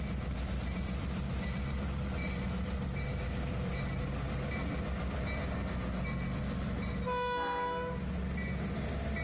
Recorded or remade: recorded